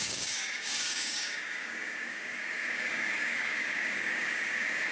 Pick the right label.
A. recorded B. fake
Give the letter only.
B